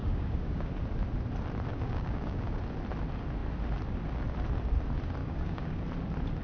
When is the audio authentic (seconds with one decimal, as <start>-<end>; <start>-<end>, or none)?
0.7-1.7; 2.6-5.2; 5.8-6.4